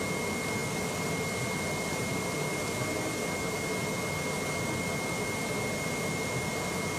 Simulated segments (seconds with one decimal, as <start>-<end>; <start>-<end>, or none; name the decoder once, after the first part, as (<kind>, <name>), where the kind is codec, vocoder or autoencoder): none